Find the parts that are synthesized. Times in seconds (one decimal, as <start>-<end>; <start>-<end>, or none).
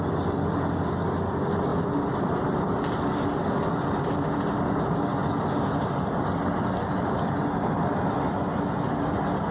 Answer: none